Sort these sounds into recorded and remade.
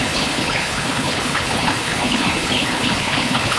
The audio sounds remade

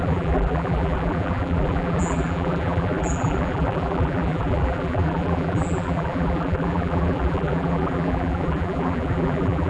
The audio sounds remade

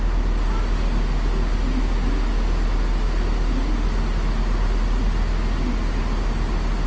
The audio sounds recorded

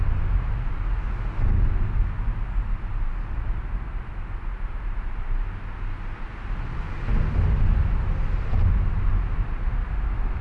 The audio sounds recorded